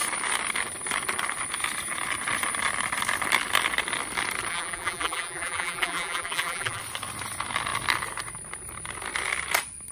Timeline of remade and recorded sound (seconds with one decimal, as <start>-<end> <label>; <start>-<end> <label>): 0.0-4.5 recorded; 4.5-6.8 remade; 6.8-9.9 recorded